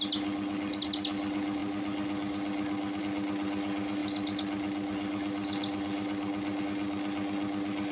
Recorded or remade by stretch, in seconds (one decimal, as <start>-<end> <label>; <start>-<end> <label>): 0.0-7.9 recorded